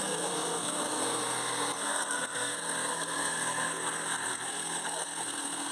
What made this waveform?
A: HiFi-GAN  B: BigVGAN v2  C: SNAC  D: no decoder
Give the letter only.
C